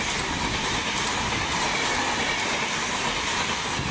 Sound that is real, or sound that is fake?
real